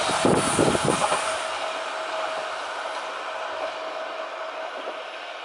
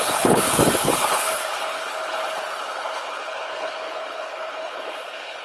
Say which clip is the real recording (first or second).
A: first